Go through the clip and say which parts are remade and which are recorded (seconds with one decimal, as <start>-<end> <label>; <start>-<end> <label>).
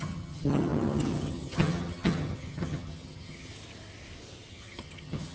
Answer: 0.0-3.5 remade; 3.5-4.5 recorded; 4.5-5.3 remade